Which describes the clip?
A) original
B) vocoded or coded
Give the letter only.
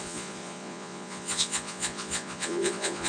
B